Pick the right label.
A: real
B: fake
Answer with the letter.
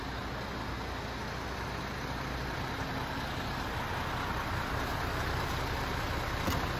A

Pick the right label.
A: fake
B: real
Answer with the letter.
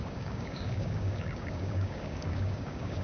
A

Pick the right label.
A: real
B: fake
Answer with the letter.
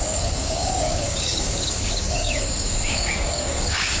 B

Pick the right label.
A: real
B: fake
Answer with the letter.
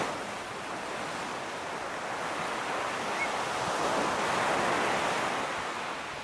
A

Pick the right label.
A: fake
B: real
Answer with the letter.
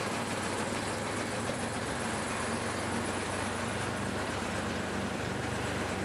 A